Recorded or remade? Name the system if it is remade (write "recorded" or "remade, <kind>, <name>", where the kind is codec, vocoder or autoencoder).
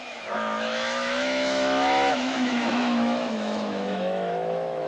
remade, autoencoder, DAC-VAE